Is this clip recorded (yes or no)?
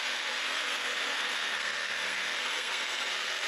no